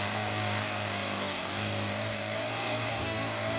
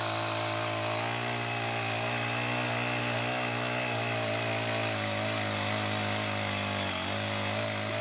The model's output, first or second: first